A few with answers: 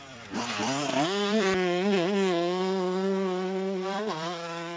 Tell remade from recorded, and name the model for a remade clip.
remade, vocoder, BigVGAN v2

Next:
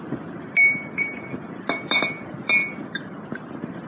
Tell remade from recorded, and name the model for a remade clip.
remade, vocoder, BigVGAN v2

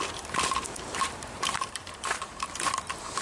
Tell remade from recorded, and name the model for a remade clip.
remade, vocoder, BigVGAN v2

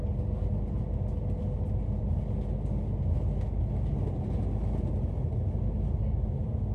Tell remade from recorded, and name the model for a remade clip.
recorded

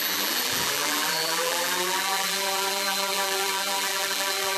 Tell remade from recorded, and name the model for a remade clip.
remade, vocoder, BigVGAN v2